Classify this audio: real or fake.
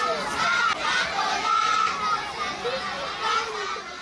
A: real